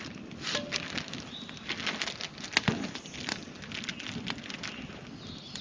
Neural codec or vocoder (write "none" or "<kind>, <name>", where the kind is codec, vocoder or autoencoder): none